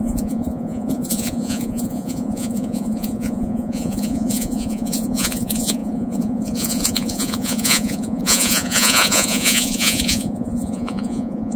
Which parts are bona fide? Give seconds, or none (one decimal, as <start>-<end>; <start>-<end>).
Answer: none